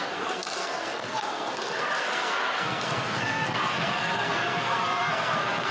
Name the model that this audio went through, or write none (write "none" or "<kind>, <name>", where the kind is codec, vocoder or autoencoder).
codec, SNAC